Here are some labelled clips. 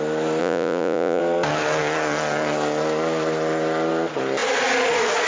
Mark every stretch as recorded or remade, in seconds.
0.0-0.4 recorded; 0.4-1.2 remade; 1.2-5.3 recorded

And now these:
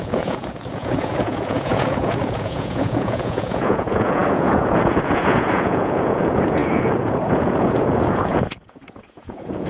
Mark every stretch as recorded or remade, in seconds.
0.0-9.7 remade